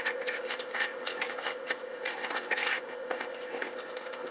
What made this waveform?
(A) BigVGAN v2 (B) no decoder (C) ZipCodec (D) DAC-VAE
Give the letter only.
C